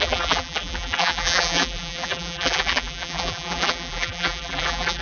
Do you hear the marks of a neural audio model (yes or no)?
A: yes